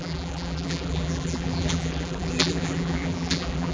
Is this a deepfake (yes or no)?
yes